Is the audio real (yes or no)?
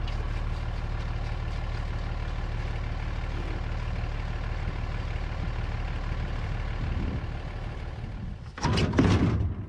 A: yes